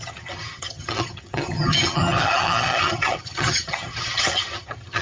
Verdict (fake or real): fake